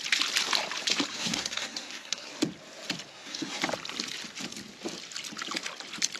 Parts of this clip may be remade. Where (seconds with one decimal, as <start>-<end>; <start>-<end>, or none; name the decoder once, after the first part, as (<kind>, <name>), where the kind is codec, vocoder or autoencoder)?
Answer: 1.1-2.3 (codec, SNAC); 3.1-3.6